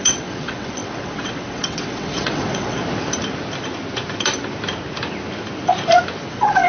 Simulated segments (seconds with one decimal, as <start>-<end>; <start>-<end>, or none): 0.0-2.8; 6.3-6.7